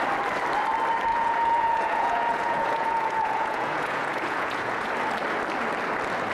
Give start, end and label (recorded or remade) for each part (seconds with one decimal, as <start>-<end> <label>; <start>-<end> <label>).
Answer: 0.0-1.1 recorded; 1.1-4.9 remade; 4.9-6.3 recorded